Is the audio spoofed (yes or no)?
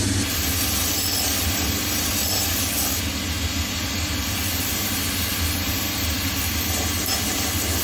no